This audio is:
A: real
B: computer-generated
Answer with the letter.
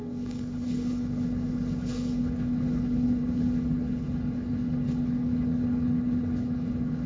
B